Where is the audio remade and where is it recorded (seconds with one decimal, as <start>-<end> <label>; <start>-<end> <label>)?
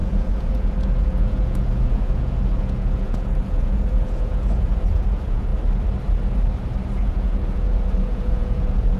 0.0-5.5 remade; 5.5-7.1 recorded; 7.1-9.0 remade